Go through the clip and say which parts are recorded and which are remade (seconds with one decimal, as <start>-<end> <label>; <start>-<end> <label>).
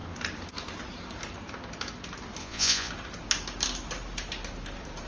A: 0.0-2.4 recorded; 2.4-2.9 remade; 2.9-5.1 recorded